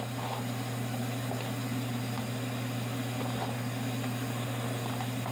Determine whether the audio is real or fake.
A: real